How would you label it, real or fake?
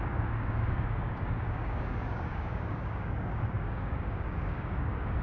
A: fake